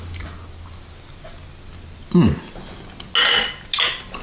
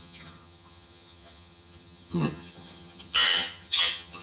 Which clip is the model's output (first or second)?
second